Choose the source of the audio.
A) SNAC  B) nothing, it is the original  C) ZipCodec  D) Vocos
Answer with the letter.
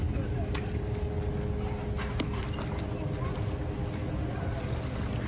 B